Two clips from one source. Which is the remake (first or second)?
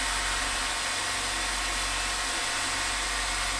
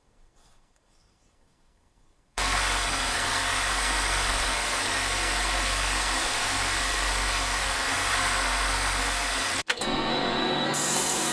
second